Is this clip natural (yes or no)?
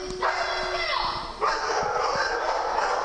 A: yes